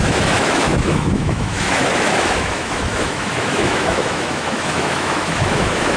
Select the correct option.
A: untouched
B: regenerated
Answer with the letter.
B